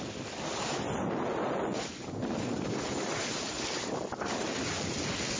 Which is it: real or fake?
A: real